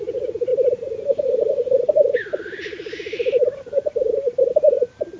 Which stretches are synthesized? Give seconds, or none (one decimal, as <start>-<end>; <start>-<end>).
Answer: 0.5-3.6